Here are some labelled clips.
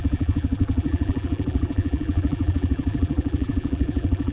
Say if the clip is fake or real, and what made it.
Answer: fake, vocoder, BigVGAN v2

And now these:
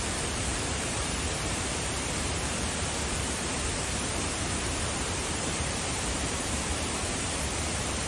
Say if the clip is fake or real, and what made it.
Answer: fake, vocoder, BigVGAN v2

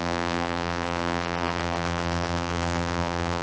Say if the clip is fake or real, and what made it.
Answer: fake, vocoder, BigVGAN v2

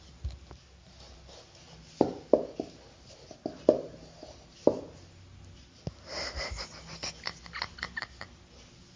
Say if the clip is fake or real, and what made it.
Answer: real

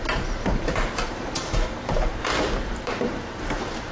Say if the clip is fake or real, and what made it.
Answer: fake, vocoder, BigVGAN v2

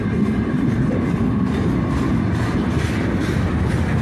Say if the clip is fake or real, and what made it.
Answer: real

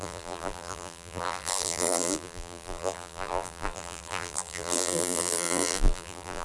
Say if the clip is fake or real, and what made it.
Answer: fake, vocoder, BigVGAN v2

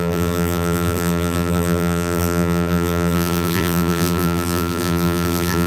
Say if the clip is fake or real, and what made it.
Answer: fake, vocoder, BigVGAN v2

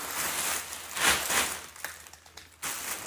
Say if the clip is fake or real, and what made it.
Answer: real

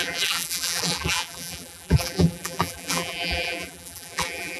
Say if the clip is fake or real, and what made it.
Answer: fake, vocoder, BigVGAN v2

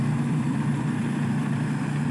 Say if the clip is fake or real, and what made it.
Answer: fake, vocoder, BigVGAN v2